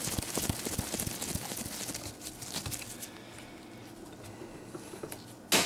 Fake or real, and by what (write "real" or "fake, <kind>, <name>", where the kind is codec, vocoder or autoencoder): real